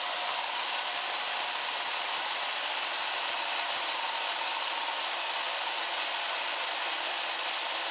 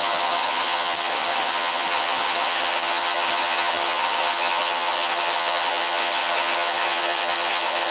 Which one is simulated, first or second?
second